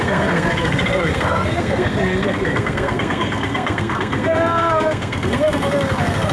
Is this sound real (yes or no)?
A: no